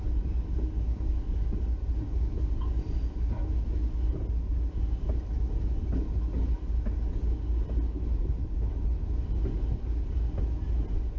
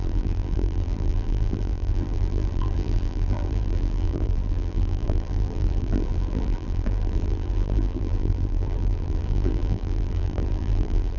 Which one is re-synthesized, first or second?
second